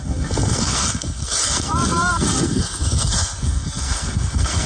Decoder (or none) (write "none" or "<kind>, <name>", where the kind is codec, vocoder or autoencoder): codec, SNAC